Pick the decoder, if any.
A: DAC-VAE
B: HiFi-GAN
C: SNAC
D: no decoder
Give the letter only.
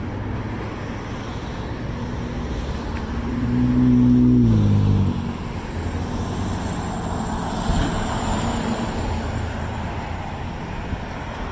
D